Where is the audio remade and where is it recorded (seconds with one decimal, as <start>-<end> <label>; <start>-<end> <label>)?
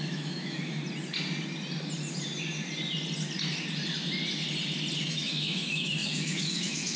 0.0-0.8 remade; 0.8-5.0 recorded; 5.0-7.0 remade